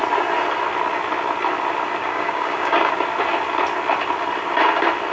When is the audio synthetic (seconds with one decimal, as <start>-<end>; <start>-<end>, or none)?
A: 2.0-2.9